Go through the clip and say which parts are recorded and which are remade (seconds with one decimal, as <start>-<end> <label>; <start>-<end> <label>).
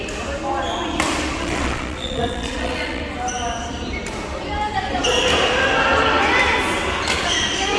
0.0-1.4 recorded; 1.4-3.0 remade; 3.0-7.8 recorded